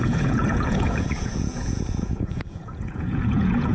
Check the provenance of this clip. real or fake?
fake